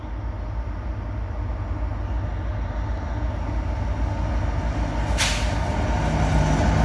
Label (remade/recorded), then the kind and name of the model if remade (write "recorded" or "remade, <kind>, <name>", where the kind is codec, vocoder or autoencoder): recorded